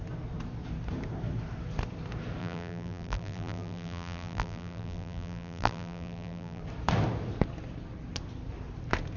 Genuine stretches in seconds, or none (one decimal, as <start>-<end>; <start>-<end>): 0.0-2.4; 6.6-9.2